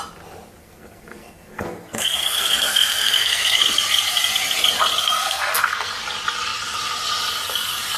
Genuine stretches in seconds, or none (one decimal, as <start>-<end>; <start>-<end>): 0.0-0.6; 3.6-5.0; 5.9-8.0